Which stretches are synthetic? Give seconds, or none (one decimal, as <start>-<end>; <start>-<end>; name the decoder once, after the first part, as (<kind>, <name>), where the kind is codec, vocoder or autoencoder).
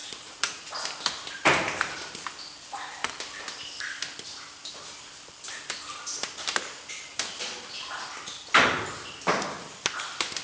0.0-0.7 (vocoder, Vocos)